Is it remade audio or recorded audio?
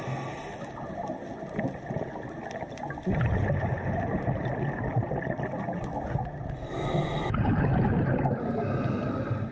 recorded